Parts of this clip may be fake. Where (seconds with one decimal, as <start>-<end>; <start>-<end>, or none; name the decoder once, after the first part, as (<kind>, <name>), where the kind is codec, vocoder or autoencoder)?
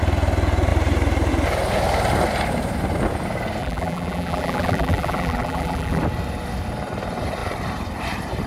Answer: 3.6-6.0 (vocoder, BigVGAN v2)